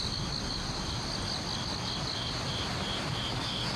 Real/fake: real